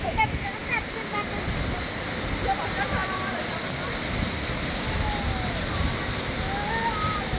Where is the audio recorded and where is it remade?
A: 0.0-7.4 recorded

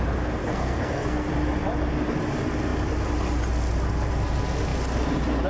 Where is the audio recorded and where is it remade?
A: 0.0-0.4 recorded; 0.4-1.3 remade; 1.3-5.5 recorded

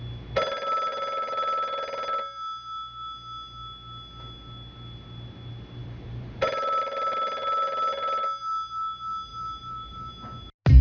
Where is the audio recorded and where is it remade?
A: 0.0-5.8 recorded; 5.8-6.8 remade; 6.8-9.3 recorded; 9.3-10.1 remade; 10.1-10.8 recorded

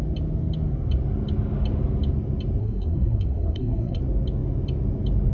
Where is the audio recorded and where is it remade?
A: 0.0-2.6 recorded; 2.6-4.0 remade; 4.0-5.3 recorded

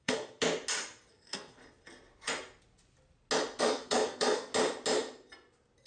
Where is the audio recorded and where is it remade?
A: 0.0-0.4 remade; 0.4-1.1 recorded; 1.1-1.6 remade; 1.6-3.6 recorded; 3.6-4.5 remade; 4.5-5.9 recorded

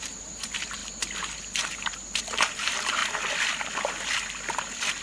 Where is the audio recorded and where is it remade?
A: 0.0-0.8 remade; 0.8-2.2 recorded; 2.2-3.0 remade; 3.0-5.0 recorded

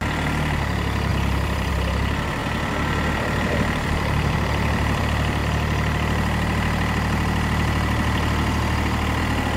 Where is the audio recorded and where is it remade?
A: 0.0-1.1 recorded; 1.1-1.7 remade; 1.7-2.4 recorded; 2.4-5.0 remade; 5.0-9.6 recorded